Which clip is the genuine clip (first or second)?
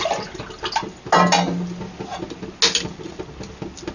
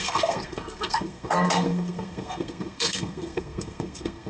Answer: first